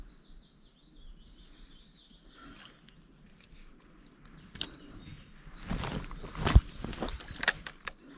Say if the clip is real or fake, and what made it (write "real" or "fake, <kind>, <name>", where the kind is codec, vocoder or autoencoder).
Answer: real